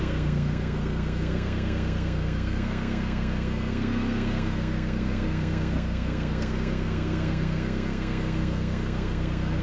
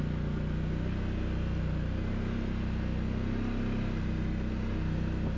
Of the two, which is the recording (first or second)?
second